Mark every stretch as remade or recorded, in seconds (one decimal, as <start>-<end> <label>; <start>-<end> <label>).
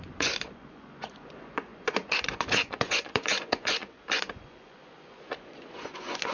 0.0-6.3 remade